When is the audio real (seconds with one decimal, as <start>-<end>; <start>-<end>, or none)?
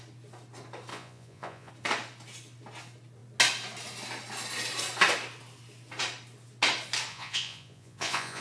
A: 0.0-0.9; 1.7-7.1